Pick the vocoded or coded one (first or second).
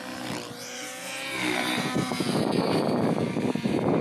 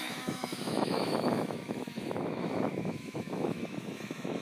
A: second